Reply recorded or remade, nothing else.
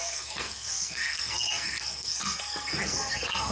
remade